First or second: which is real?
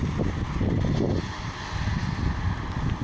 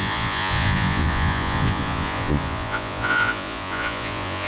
first